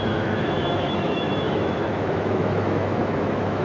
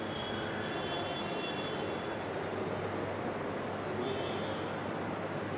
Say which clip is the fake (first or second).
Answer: first